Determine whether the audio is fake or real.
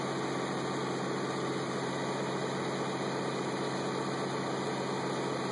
real